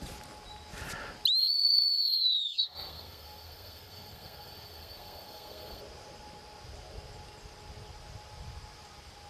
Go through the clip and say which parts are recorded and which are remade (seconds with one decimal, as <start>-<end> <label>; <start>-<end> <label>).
0.0-1.4 recorded; 1.4-5.8 remade; 5.8-9.3 recorded